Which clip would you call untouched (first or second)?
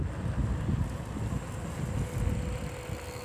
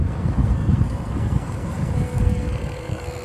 first